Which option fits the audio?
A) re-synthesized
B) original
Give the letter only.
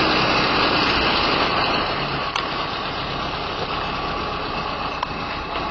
B